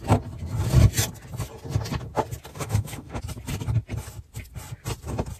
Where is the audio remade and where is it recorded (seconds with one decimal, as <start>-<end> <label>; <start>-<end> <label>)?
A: 0.0-2.5 recorded; 2.5-3.2 remade; 3.2-5.4 recorded